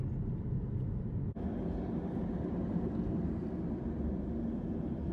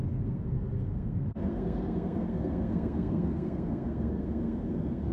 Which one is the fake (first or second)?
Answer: second